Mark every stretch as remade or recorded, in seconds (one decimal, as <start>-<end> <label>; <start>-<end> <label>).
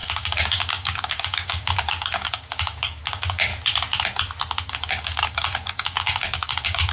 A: 0.0-3.5 remade; 3.5-4.7 recorded; 4.7-6.9 remade